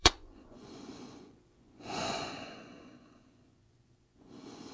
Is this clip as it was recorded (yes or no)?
no